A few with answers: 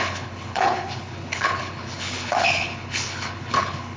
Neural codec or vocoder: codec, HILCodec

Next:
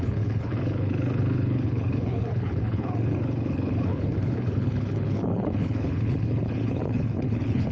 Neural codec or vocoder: codec, HILCodec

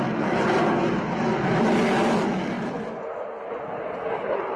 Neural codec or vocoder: none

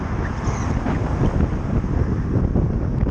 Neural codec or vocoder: none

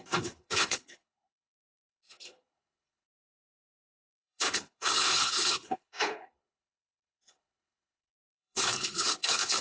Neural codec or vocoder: codec, HILCodec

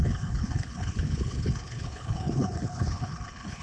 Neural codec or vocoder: codec, HILCodec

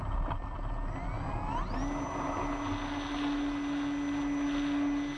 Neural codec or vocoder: none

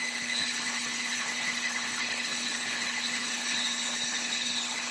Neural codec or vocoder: codec, HILCodec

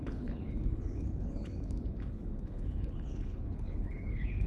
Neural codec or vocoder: codec, HILCodec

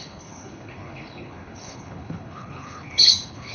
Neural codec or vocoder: codec, HILCodec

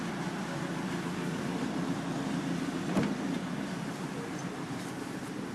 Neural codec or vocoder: none